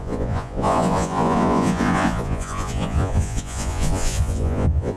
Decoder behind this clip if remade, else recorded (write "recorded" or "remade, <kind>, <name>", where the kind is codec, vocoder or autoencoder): remade, vocoder, Vocos